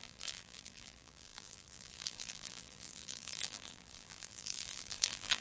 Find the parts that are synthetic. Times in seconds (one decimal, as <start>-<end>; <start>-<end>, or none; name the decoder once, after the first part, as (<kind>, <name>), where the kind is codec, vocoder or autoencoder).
0.0-5.4 (vocoder, BigVGAN v2)